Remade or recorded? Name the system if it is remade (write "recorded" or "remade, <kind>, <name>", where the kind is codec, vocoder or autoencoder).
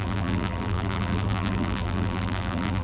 remade, vocoder, BigVGAN v2